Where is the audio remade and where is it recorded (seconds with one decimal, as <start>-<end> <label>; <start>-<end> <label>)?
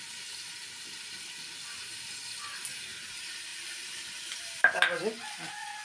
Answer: 0.0-3.5 recorded; 3.5-4.4 remade; 4.4-5.8 recorded